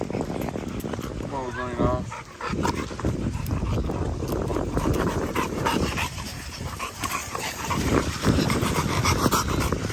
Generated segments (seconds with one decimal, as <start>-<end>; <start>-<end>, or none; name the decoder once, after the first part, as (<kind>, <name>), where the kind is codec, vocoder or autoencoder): 2.5-3.5 (vocoder, BigVGAN v2); 4.5-8.7